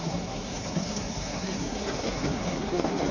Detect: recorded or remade remade